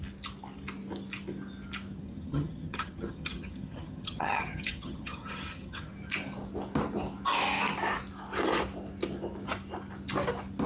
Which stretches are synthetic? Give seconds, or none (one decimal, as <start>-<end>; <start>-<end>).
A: 1.9-5.9